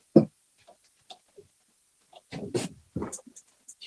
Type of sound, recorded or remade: recorded